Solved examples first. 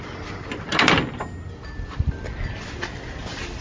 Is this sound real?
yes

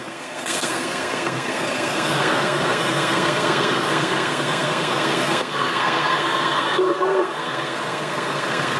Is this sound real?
no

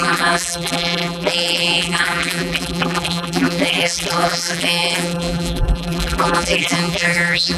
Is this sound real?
no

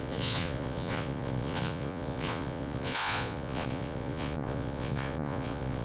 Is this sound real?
no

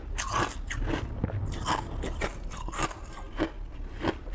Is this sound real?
yes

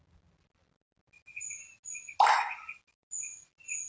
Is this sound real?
yes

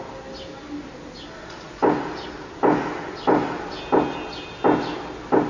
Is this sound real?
yes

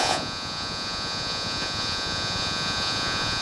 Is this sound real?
no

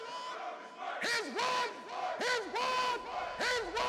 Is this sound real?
yes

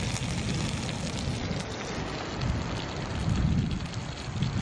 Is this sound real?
yes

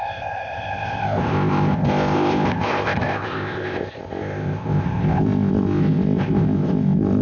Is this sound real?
no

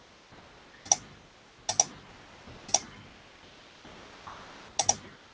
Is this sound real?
yes